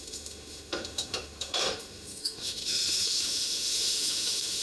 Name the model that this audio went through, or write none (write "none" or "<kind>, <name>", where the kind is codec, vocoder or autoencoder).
autoencoder, DAC-VAE